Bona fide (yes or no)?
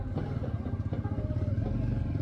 yes